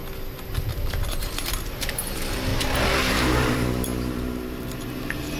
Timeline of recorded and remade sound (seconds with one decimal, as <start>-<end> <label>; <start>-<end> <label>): 0.0-0.6 recorded; 0.6-2.5 remade; 2.5-3.1 recorded; 3.1-5.4 remade